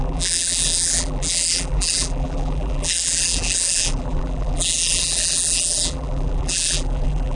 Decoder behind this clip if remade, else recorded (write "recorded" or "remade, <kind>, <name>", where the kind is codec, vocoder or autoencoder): remade, vocoder, BigVGAN v2